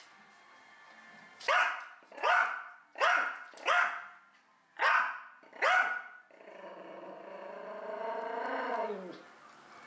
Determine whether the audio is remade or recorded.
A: recorded